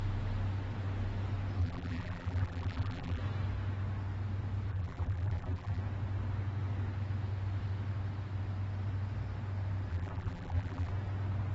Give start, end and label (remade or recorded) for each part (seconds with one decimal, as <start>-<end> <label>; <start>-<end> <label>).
0.0-1.6 recorded; 1.6-3.2 remade; 3.2-4.7 recorded; 4.7-5.8 remade; 5.8-9.9 recorded; 9.9-10.9 remade; 10.9-11.5 recorded